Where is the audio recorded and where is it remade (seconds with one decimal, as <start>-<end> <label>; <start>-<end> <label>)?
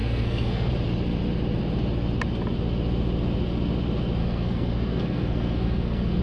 0.0-0.7 remade; 0.7-4.2 recorded; 4.2-6.2 remade